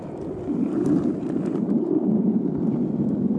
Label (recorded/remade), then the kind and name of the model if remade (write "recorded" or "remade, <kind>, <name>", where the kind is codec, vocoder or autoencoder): recorded